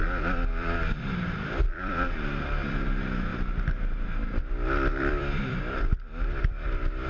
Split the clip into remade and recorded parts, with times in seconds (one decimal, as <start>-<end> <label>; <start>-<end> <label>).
0.0-3.3 remade; 3.3-5.0 recorded; 5.0-7.1 remade